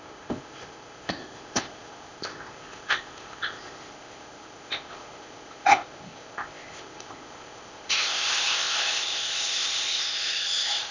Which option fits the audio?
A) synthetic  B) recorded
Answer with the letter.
A